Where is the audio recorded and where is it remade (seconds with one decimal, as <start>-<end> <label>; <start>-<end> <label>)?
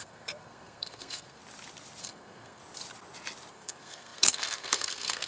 0.0-1.4 remade; 1.4-2.0 recorded; 2.0-2.6 remade; 2.6-3.5 recorded; 3.5-5.3 remade